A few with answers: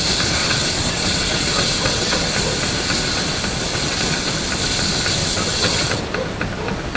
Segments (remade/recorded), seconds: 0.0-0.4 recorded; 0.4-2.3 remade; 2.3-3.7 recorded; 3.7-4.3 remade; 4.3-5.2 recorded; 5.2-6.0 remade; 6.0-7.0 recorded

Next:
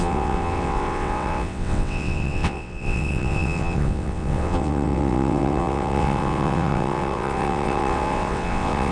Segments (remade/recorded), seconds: 0.0-8.9 remade

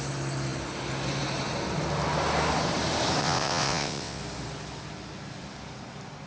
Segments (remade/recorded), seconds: 0.0-3.2 recorded; 3.2-4.2 remade; 4.2-6.3 recorded

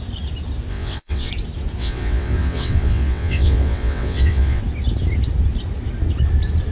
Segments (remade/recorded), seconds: 0.0-0.7 recorded; 0.7-1.3 remade; 1.3-1.8 recorded; 1.8-4.6 remade; 4.6-6.7 recorded

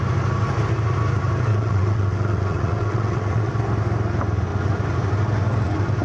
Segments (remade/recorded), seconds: 0.0-1.5 recorded; 1.5-3.5 remade; 3.5-6.0 recorded

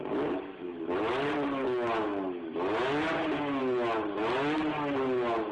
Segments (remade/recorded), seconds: 0.0-5.5 recorded

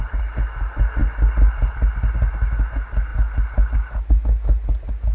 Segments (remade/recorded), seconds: 0.0-5.1 recorded